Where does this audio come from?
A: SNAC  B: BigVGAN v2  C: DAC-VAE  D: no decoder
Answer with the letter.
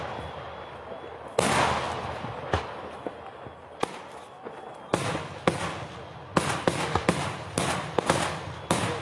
D